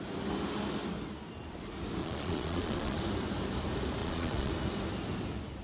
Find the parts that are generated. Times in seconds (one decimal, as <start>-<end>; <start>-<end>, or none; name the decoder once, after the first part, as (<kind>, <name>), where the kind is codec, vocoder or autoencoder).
2.0-3.0 (vocoder, Vocos); 4.0-4.5